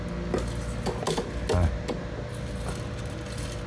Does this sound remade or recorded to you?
recorded